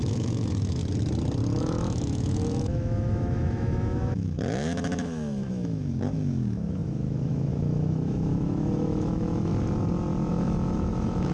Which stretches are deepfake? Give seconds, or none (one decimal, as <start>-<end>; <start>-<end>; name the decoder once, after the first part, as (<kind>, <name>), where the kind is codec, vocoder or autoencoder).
0.0-0.8 (autoencoder, DAC-VAE); 1.6-9.5; 10.3-11.3